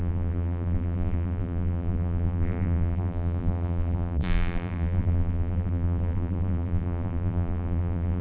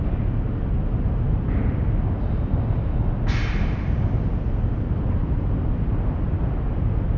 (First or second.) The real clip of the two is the second